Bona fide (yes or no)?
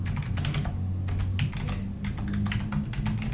yes